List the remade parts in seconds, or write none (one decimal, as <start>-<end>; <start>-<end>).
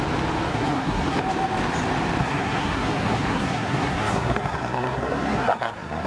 0.5-1.2; 2.2-6.1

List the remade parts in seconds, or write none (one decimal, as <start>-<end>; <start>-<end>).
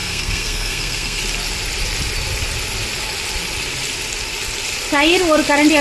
0.0-1.2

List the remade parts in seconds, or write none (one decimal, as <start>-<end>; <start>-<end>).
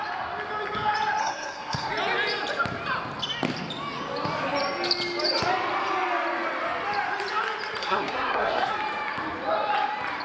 1.2-1.9; 7.8-8.7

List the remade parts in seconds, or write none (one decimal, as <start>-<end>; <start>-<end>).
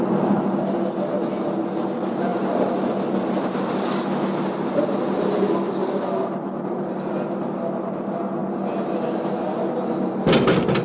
none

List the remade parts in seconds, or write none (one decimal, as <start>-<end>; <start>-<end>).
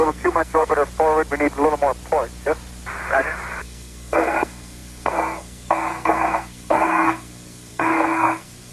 0.0-0.7; 3.6-8.7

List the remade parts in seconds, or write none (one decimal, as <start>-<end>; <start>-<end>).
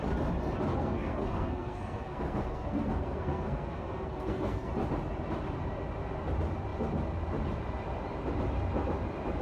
0.7-4.7